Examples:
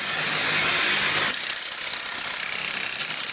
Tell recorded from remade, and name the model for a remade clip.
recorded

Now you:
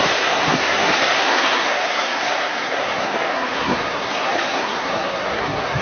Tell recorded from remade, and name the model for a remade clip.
remade, codec, SNAC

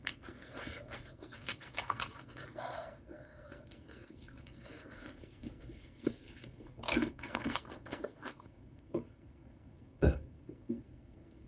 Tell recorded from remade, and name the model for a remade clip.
remade, codec, SNAC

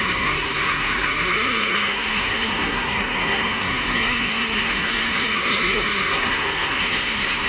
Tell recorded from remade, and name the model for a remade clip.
remade, codec, SNAC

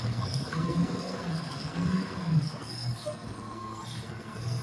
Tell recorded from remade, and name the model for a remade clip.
remade, codec, SNAC